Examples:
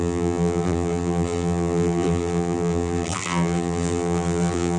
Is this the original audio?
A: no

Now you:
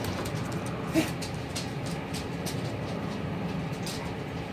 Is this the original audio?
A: yes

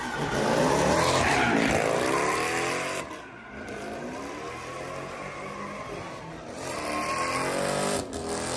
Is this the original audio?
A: yes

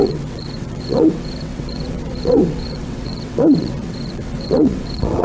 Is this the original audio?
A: no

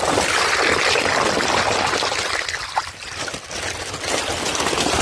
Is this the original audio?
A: yes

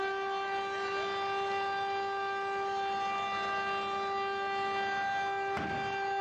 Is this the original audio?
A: yes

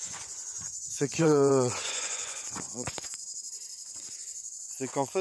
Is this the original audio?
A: no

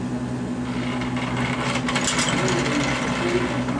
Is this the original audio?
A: yes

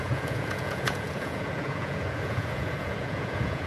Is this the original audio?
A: no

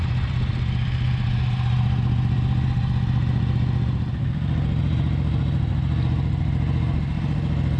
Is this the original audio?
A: yes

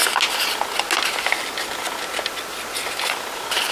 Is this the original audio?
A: yes